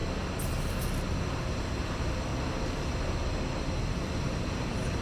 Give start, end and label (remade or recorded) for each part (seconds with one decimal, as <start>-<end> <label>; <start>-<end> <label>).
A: 0.0-1.3 recorded; 1.3-2.3 remade; 2.3-3.6 recorded; 3.6-5.0 remade